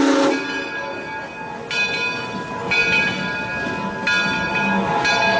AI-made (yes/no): no